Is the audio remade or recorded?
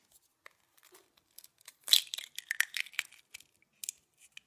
recorded